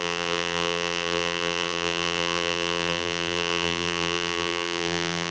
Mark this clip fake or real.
fake